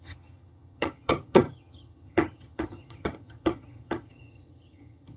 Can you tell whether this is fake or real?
fake